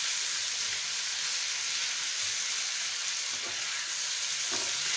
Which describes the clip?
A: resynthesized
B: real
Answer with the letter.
B